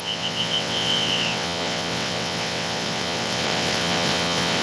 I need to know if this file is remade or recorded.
remade